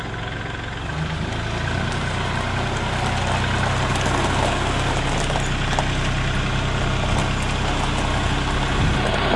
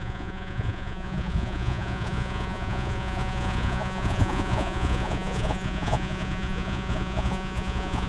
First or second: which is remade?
second